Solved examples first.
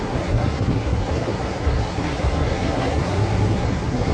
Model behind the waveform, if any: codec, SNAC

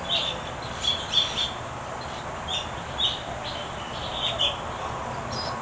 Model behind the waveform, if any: none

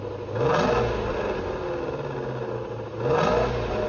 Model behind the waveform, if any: none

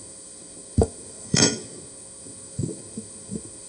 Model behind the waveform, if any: autoencoder, DAC-VAE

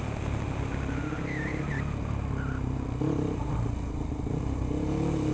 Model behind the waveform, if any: none